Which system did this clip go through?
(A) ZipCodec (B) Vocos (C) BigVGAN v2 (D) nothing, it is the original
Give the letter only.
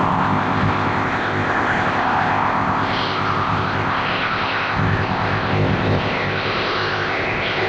A